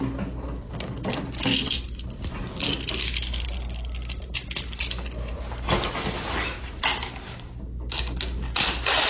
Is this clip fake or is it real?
real